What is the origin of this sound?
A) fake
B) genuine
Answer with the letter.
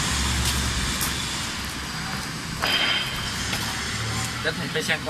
B